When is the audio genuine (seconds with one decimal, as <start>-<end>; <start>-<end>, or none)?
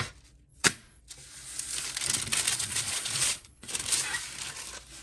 0.0-0.5; 1.0-2.5; 3.7-5.0